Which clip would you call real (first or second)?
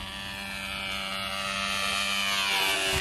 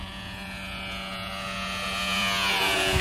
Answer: first